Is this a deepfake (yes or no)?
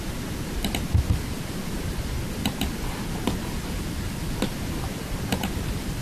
no